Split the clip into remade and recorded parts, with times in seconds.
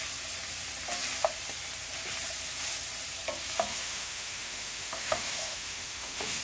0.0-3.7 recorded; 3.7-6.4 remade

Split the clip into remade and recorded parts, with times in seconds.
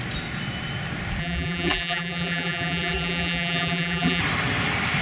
0.0-1.2 recorded; 1.2-4.2 remade; 4.2-5.0 recorded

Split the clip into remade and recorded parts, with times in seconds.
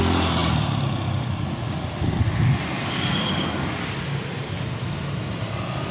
0.0-5.9 recorded